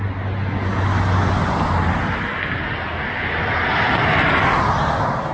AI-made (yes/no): no